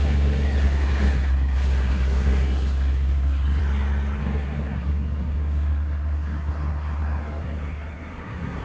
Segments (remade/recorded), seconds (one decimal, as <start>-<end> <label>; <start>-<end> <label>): 0.0-3.6 remade; 3.6-4.2 recorded; 4.2-8.6 remade